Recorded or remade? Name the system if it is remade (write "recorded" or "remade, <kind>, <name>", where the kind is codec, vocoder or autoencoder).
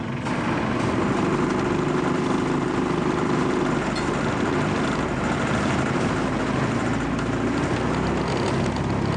recorded